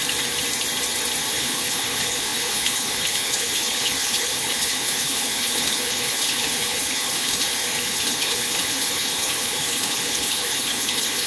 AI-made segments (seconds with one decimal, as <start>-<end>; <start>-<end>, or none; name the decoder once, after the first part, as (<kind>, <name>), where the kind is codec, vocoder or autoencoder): 1.3-11.3 (codec, HILCodec)